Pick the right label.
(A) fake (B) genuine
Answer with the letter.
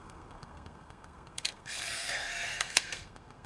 A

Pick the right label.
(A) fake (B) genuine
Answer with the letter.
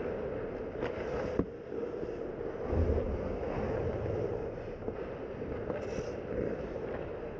B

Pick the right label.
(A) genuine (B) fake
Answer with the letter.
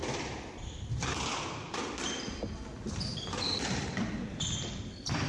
B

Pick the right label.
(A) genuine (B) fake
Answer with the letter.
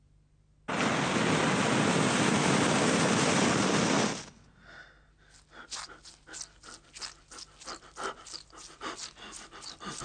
A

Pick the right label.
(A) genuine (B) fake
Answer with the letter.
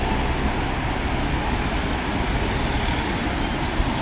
A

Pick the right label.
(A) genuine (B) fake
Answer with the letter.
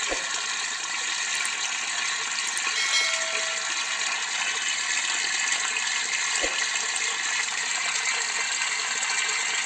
A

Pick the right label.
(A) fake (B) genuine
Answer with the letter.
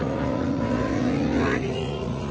A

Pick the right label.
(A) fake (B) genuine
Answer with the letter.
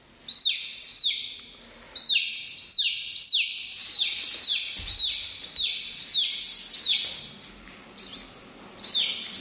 B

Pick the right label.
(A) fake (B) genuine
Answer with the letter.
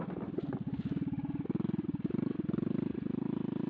B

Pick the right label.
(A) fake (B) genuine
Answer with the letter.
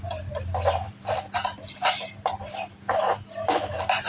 B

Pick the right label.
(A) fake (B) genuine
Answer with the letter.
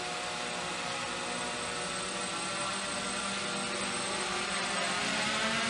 B